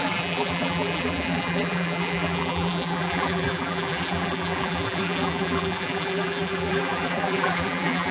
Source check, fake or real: fake